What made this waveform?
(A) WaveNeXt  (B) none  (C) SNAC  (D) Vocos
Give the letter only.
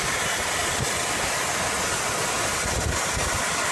B